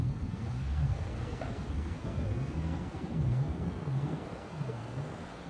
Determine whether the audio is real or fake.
fake